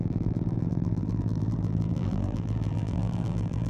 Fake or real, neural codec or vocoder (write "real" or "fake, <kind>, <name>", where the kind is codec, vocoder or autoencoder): fake, vocoder, BigVGAN v2